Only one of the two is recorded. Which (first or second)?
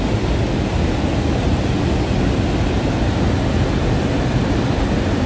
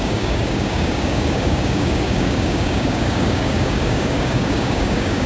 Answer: first